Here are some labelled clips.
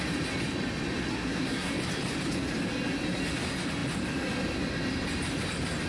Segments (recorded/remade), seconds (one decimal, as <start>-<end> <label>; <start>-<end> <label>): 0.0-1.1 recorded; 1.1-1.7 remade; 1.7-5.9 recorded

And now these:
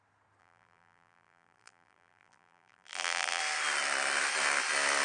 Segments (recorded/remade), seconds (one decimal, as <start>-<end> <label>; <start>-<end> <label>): 0.0-0.4 recorded; 0.4-3.4 remade; 3.4-5.0 recorded

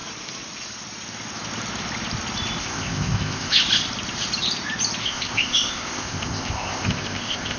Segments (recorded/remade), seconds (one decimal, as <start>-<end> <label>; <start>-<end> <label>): 0.0-2.6 recorded; 2.6-3.6 remade; 3.6-5.0 recorded; 5.0-7.6 remade

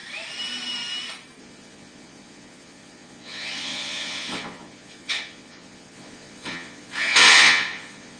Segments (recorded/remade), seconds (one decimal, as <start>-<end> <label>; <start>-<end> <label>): 0.0-1.4 recorded; 1.4-8.2 remade

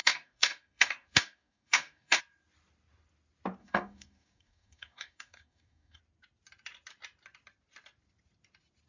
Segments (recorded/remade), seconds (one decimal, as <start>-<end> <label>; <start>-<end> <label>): 0.0-2.2 remade; 2.2-3.6 recorded; 3.6-6.0 remade; 6.0-8.9 recorded

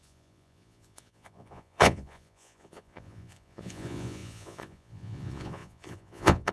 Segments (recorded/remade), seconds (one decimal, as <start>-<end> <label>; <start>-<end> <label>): 0.0-6.5 remade